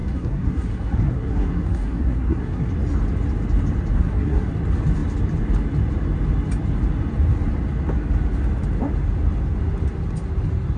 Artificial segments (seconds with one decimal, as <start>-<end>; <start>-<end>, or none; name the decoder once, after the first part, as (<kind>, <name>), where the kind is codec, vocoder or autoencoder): 0.0-2.7 (codec, SNAC); 3.9-4.5